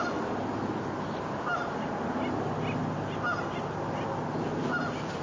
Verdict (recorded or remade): recorded